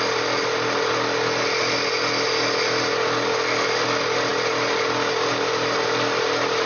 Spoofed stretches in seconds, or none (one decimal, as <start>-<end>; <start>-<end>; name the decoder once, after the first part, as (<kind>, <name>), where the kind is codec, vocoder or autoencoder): none

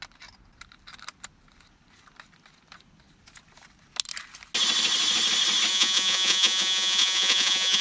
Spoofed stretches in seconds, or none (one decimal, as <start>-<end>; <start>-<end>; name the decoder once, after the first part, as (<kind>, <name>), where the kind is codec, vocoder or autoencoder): 5.7-7.8 (vocoder, Vocos)

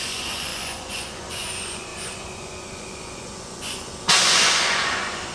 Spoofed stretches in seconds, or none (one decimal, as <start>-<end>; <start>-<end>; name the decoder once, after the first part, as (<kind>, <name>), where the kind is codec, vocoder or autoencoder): 0.0-5.3 (vocoder, Vocos)

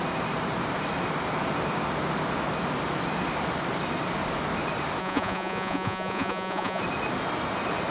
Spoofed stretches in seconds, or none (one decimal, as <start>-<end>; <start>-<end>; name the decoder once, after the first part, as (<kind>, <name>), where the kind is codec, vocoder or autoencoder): 5.0-6.8 (vocoder, Vocos)